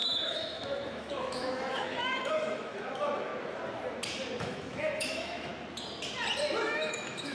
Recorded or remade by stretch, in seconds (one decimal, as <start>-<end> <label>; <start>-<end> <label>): 0.0-3.3 remade; 3.3-4.4 recorded; 4.4-5.5 remade; 5.5-6.6 recorded; 6.6-7.3 remade